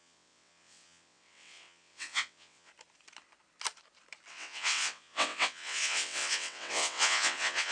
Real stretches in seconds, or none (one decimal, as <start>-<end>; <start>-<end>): 2.7-4.3